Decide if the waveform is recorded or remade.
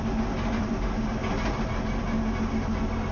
recorded